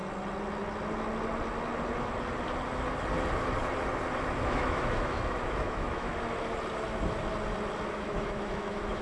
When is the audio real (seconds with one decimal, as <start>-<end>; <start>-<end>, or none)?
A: 0.0-4.4; 6.1-7.9